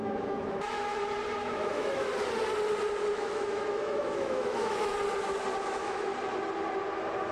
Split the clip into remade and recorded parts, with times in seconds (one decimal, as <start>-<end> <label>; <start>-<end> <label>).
0.0-0.9 remade; 0.9-1.4 recorded; 1.4-2.1 remade; 2.1-3.1 recorded; 3.1-4.9 remade; 4.9-5.6 recorded; 5.6-6.1 remade; 6.1-7.3 recorded